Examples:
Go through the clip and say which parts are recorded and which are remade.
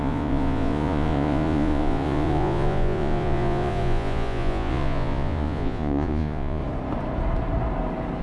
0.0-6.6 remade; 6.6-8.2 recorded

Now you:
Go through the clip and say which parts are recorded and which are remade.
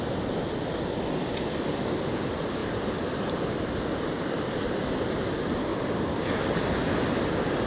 0.0-2.6 recorded; 2.6-3.2 remade; 3.2-5.7 recorded; 5.7-6.4 remade; 6.4-7.7 recorded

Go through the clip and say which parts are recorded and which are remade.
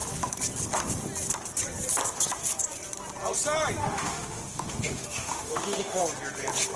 0.0-3.8 recorded; 3.8-6.0 remade; 6.0-6.8 recorded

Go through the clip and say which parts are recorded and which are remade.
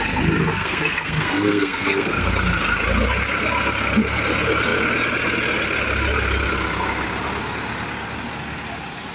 0.0-0.5 recorded; 0.5-2.3 remade; 2.3-9.1 recorded